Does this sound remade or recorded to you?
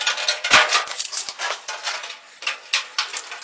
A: recorded